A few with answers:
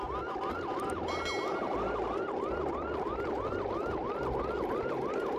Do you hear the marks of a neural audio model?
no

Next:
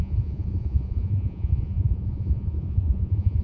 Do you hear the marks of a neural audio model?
yes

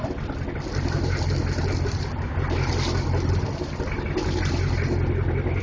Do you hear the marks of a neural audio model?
no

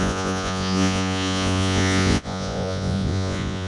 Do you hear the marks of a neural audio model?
yes